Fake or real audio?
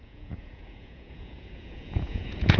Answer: fake